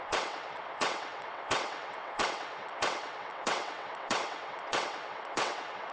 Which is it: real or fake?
fake